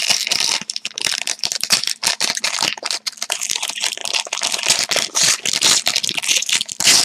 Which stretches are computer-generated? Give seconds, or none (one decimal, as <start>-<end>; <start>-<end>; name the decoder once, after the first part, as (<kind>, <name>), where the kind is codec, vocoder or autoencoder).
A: none